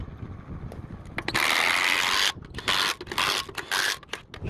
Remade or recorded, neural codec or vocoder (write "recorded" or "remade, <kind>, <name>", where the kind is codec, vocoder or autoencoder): recorded